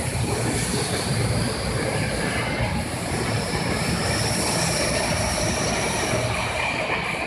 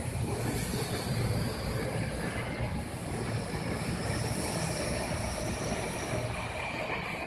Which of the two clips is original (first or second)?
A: second